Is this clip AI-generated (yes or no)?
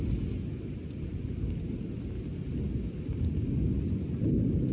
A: no